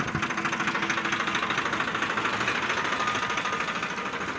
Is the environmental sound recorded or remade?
recorded